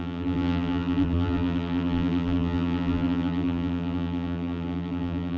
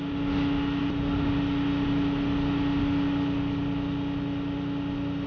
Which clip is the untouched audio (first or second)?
second